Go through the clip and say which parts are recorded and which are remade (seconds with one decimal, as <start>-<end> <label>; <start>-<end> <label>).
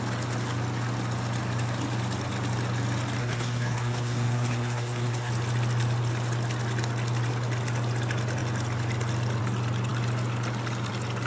0.0-3.2 recorded; 3.2-5.3 remade; 5.3-11.3 recorded